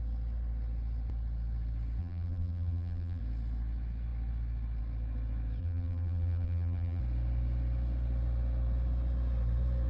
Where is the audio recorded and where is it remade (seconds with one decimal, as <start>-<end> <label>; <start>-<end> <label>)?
0.0-2.0 recorded; 2.0-3.2 remade; 3.2-5.6 recorded; 5.6-7.0 remade; 7.0-9.9 recorded